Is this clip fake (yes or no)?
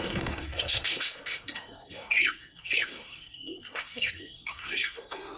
yes